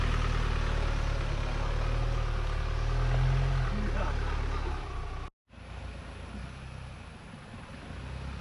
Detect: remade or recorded recorded